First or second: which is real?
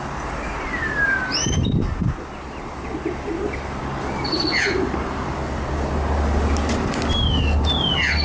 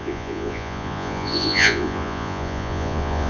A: first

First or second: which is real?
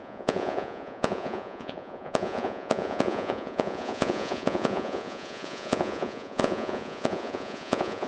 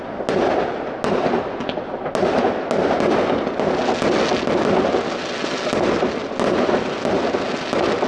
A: second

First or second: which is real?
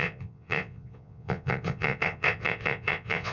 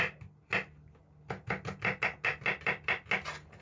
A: second